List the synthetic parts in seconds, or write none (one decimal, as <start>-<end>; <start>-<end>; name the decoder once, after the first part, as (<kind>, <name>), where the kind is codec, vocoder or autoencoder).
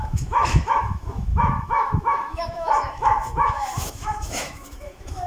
0.0-5.3 (autoencoder, DAC-VAE)